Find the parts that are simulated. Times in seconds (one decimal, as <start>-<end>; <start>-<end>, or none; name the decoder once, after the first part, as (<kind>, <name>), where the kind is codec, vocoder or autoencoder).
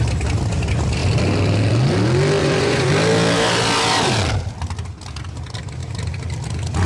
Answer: 2.4-2.9 (vocoder, Vocos)